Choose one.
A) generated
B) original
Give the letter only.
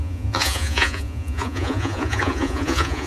A